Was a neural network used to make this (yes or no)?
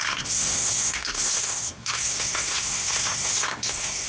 yes